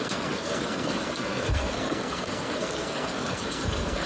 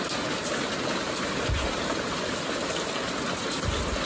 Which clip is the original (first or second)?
second